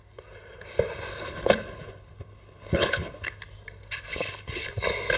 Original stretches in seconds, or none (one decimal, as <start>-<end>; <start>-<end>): 0.0-1.1; 3.3-4.1; 4.7-5.2